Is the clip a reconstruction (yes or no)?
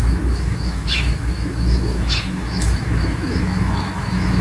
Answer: yes